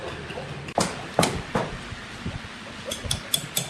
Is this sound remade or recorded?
recorded